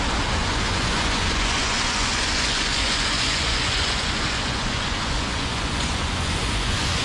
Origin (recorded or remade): remade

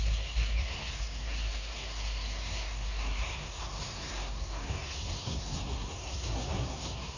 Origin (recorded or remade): remade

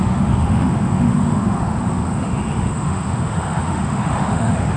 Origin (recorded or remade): remade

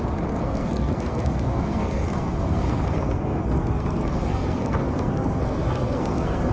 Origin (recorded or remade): remade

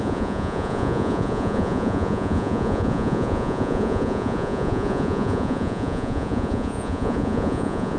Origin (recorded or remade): remade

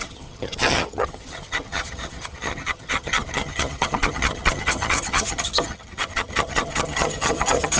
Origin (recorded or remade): remade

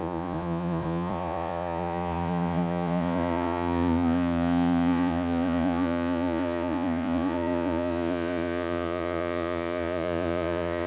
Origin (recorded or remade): remade